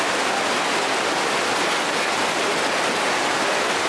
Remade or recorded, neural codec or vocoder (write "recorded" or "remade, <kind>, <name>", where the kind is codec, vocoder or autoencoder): recorded